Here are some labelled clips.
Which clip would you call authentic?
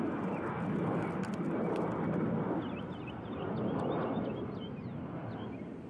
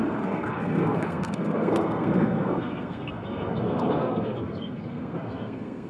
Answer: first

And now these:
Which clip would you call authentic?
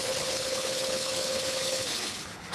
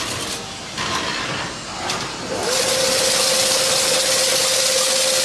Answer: second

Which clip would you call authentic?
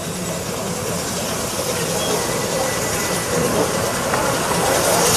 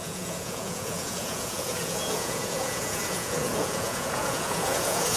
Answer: first